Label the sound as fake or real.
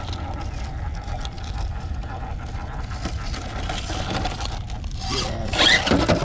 real